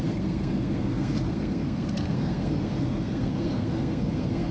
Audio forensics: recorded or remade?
remade